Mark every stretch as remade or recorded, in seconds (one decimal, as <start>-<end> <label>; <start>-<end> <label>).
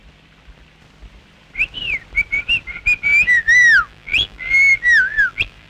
0.0-3.1 recorded; 3.1-5.7 remade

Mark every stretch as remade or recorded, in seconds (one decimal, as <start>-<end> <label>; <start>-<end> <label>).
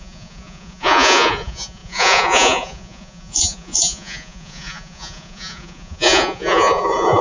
0.0-7.2 remade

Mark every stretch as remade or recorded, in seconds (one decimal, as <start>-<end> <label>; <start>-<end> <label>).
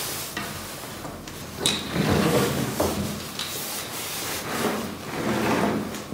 0.0-2.1 recorded; 2.1-2.8 remade; 2.8-6.1 recorded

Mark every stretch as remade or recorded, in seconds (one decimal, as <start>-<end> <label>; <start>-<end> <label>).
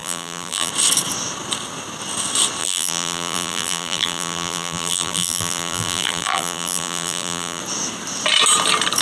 0.0-0.7 remade; 0.7-2.6 recorded; 2.6-7.6 remade; 7.6-9.0 recorded